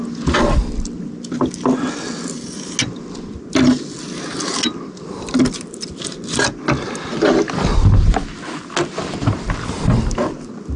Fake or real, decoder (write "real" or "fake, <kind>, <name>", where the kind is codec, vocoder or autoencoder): real